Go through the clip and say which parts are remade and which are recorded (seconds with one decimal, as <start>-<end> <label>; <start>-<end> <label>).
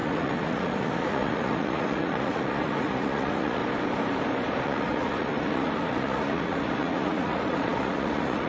0.0-3.6 remade; 3.6-4.6 recorded; 4.6-8.5 remade